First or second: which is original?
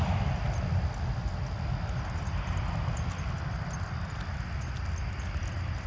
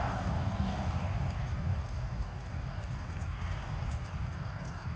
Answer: first